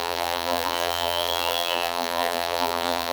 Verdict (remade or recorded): remade